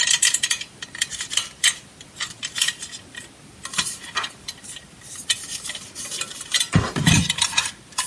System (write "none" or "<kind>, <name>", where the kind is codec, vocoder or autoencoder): none